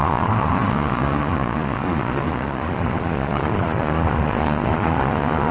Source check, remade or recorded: remade